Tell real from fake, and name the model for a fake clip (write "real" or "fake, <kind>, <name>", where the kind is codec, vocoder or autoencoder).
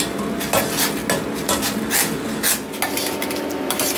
real